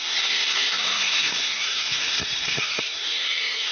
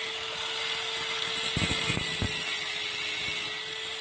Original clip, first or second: second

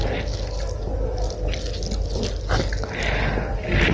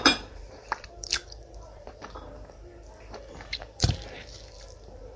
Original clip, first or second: first